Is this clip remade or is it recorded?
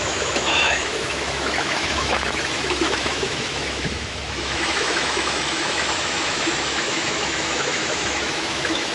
remade